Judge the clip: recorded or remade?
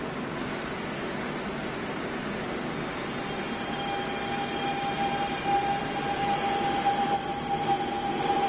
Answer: recorded